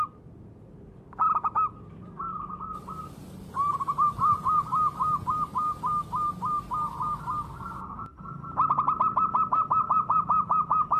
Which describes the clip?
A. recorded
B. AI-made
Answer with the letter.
A